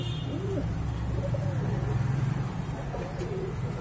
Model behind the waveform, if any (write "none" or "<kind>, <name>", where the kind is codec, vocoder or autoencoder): none